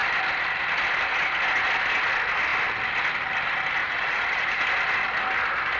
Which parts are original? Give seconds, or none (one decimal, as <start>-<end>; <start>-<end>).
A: 0.0-3.8; 4.6-5.8